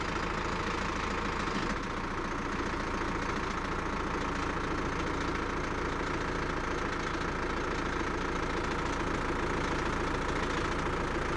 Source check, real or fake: real